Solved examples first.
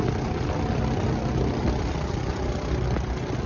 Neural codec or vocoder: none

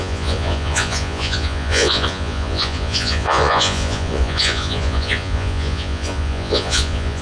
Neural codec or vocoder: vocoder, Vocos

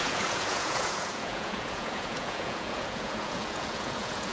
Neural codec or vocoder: vocoder, Vocos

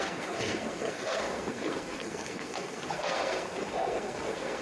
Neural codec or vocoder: codec, SNAC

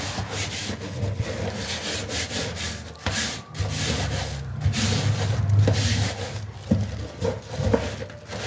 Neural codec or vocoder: none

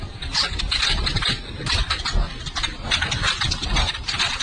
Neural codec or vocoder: none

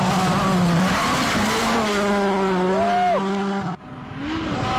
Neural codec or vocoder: none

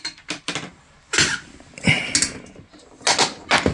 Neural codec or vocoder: none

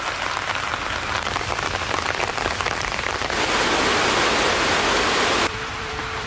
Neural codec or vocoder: vocoder, BigVGAN v2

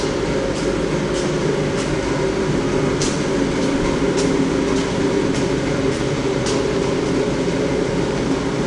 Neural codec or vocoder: none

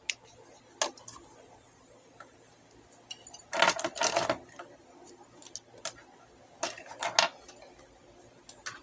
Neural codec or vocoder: none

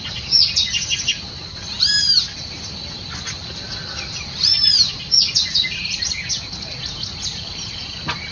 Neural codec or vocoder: none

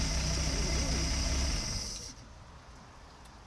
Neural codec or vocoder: none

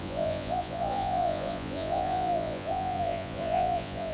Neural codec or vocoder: vocoder, Vocos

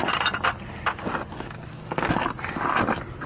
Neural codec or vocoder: none